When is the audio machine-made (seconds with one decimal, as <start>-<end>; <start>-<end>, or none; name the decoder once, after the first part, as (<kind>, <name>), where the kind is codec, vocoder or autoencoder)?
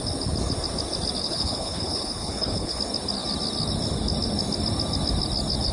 1.2-2.8 (codec, HILCodec)